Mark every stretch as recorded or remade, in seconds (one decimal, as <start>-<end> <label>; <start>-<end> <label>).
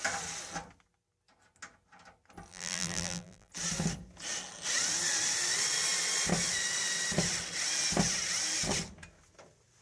0.0-2.5 recorded; 2.5-3.5 remade; 3.5-9.8 recorded